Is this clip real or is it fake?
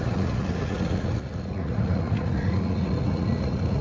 fake